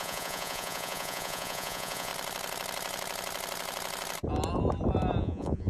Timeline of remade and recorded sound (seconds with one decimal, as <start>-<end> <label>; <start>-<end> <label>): 0.0-2.1 remade; 2.1-5.2 recorded; 5.2-5.7 remade